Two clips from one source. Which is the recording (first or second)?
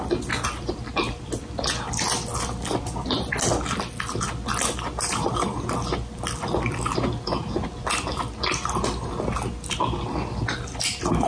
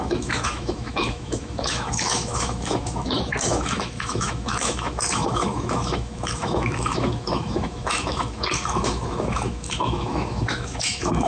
first